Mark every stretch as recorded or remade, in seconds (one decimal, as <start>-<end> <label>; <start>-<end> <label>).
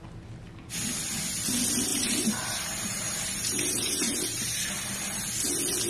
0.0-1.9 recorded; 1.9-5.0 remade; 5.0-5.9 recorded